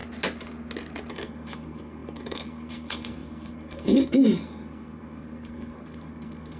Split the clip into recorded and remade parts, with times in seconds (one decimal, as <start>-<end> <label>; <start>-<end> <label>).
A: 0.0-1.1 recorded; 1.1-6.6 remade